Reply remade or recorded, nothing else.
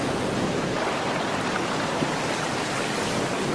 remade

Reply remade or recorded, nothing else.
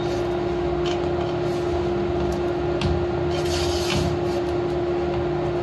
recorded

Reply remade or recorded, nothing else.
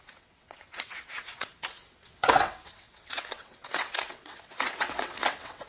remade